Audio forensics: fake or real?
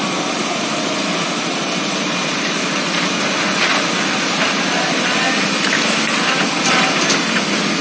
real